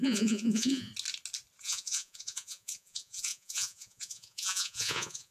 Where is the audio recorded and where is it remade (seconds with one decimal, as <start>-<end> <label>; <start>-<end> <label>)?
0.0-0.9 remade; 0.9-1.6 recorded; 1.6-5.3 remade